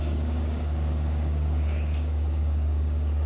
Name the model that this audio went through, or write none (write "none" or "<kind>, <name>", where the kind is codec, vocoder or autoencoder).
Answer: codec, DAC